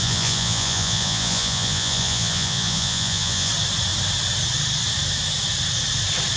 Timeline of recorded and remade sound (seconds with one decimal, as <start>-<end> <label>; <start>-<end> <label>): 0.0-3.5 remade; 3.5-6.4 recorded

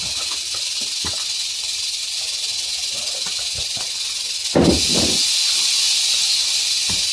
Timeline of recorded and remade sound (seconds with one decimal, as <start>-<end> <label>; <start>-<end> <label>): 0.0-7.1 recorded

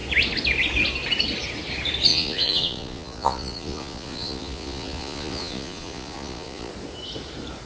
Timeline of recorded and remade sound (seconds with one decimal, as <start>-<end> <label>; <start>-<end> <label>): 0.0-2.1 recorded; 2.1-6.7 remade; 6.7-7.7 recorded

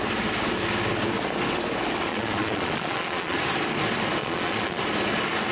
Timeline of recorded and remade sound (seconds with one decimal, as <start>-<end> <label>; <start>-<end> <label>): 0.0-2.1 recorded; 2.1-3.4 remade; 3.4-4.2 recorded; 4.2-4.8 remade; 4.8-5.5 recorded

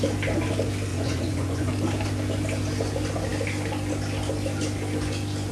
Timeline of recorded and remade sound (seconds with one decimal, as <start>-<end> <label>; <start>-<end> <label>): 0.0-0.9 recorded; 0.9-1.7 remade; 1.7-5.5 recorded

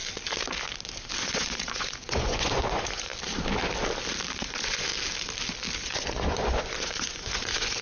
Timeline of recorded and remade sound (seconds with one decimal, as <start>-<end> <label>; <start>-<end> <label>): 0.0-1.2 recorded; 1.2-3.1 remade; 3.1-4.4 recorded; 4.4-4.9 remade; 4.9-5.8 recorded; 5.8-7.8 remade

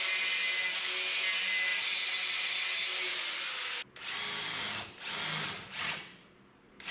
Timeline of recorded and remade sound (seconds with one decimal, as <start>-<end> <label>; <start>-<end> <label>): 0.0-6.9 recorded

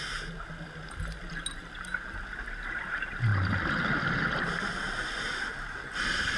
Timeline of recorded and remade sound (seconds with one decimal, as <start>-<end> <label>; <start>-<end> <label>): 0.0-6.4 recorded